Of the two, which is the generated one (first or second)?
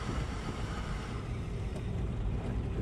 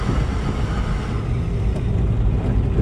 first